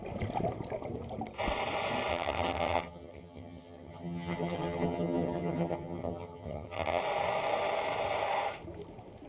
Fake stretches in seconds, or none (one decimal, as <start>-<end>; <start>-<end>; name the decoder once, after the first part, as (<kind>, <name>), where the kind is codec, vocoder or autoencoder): 2.1-7.0 (vocoder, HiFi-GAN)